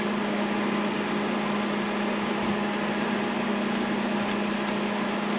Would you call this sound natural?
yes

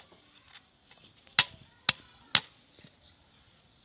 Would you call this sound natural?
yes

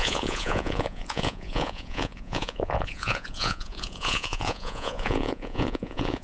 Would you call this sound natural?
no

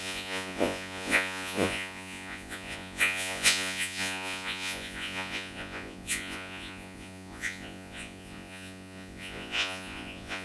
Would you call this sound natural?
no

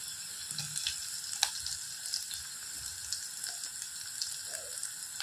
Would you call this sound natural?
yes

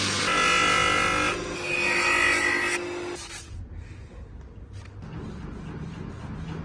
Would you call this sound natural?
yes